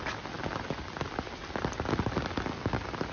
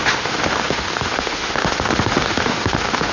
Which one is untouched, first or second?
first